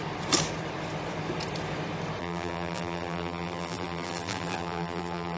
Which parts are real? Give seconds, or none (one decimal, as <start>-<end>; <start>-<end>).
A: 0.0-2.2